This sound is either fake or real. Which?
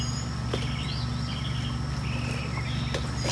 real